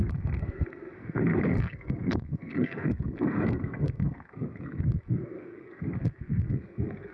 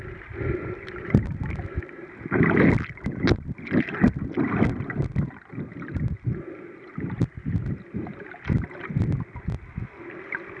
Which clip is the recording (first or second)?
second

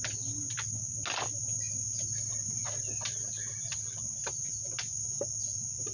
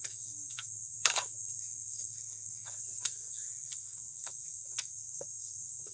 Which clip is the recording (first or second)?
first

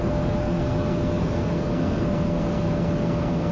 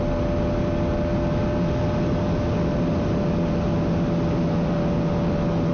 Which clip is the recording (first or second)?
second